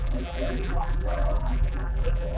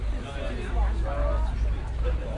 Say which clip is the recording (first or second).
second